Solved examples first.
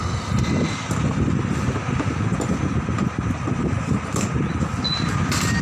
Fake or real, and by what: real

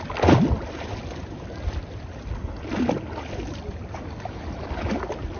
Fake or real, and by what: real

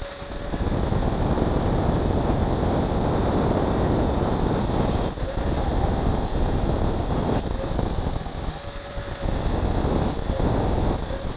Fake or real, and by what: real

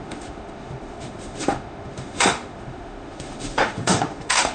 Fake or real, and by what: fake, autoencoder, DAC-VAE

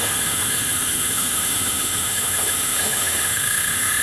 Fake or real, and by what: fake, autoencoder, DAC-VAE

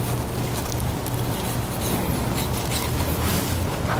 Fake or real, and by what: real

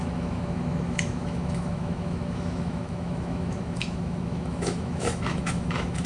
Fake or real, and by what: fake, autoencoder, DAC-VAE